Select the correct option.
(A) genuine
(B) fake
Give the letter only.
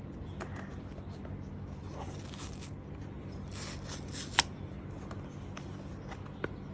A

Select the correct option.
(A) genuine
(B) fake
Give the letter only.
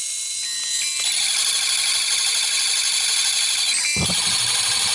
A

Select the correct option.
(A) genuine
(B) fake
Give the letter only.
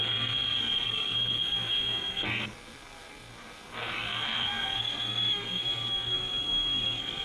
B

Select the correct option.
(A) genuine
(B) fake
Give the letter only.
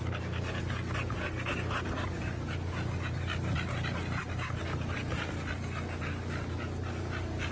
A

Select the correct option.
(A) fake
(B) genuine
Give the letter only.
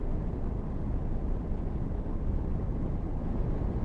B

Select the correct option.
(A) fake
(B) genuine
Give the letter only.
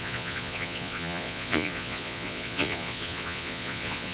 A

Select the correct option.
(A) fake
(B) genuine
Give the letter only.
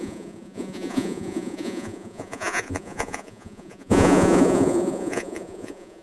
A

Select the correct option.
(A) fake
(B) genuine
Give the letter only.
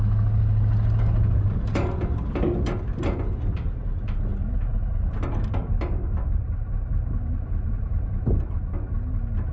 B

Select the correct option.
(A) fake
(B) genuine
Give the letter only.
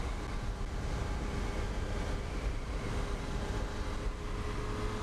B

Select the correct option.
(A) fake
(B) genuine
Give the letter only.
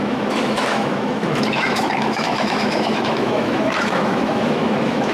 A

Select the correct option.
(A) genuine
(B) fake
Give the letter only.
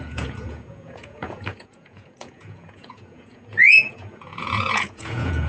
B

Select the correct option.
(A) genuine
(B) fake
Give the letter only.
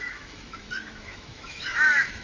B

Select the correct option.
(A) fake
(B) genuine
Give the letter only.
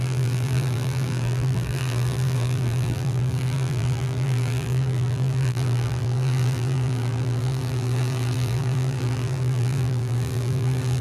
A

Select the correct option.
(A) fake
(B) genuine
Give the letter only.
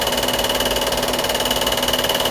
B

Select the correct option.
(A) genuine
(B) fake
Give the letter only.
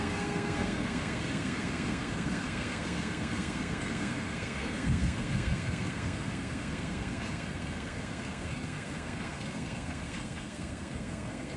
B